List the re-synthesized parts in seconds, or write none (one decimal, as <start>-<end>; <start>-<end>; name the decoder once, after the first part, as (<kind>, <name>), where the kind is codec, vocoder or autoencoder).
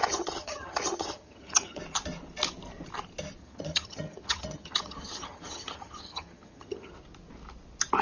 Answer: 0.0-1.8 (vocoder, HiFi-GAN); 3.4-6.9